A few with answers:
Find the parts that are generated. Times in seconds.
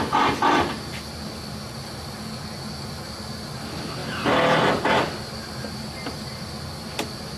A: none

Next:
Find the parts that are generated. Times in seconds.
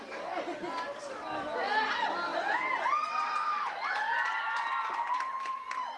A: none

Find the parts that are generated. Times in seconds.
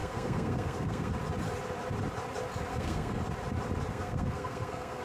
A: 0.0-1.1 (codec, SNAC); 2.7-3.2; 3.9-5.0